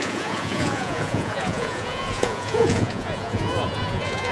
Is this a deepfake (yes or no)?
yes